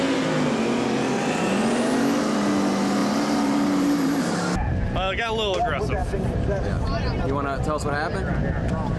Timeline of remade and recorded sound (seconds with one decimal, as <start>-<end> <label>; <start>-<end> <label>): 0.0-3.0 recorded; 3.0-4.2 remade; 4.2-9.0 recorded